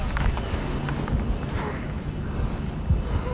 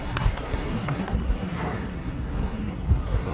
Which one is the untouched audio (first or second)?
first